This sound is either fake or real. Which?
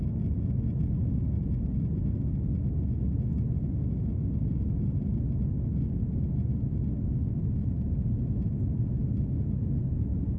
real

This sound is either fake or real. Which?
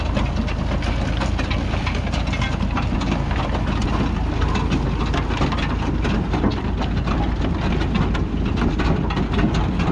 real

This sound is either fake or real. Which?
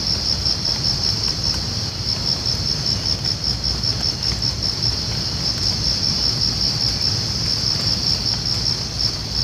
real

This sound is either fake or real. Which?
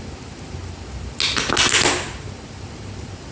real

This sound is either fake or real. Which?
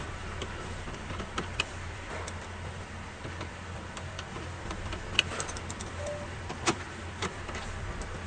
fake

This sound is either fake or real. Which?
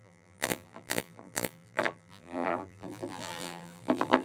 fake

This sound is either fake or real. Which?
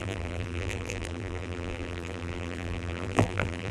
fake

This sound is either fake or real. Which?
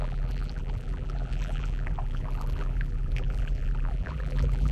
fake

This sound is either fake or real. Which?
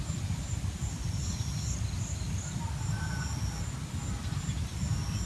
real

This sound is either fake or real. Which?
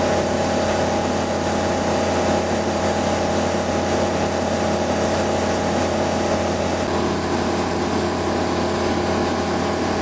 real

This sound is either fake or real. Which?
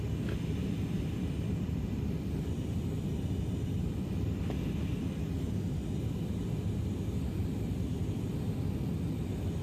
real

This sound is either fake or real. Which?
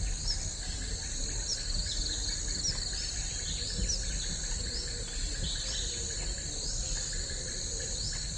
real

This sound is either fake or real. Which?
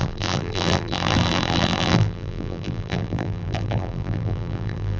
fake